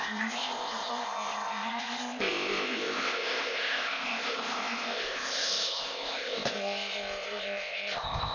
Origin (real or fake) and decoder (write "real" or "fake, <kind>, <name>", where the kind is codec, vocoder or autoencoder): fake, codec, ZipCodec